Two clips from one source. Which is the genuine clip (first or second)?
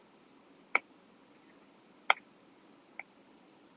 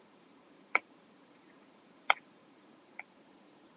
first